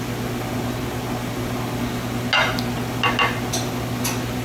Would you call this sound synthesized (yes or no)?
no